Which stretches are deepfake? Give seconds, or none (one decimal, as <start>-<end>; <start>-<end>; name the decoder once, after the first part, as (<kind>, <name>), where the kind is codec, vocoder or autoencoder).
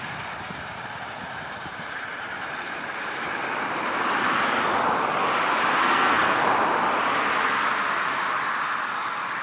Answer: 5.8-6.4 (codec, SNAC)